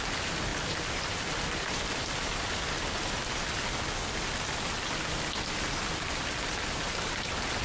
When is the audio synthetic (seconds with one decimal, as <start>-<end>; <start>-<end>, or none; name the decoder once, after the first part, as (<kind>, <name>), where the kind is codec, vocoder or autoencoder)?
none